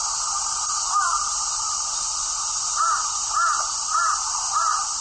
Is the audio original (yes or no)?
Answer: no